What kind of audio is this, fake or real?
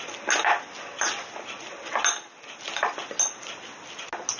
real